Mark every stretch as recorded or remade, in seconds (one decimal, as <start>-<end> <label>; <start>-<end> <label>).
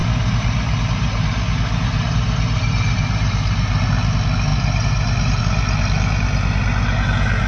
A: 0.0-3.9 remade; 3.9-4.5 recorded; 4.5-5.4 remade; 5.4-7.5 recorded